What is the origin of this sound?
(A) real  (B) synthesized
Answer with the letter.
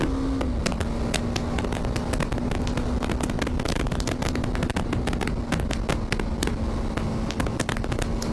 A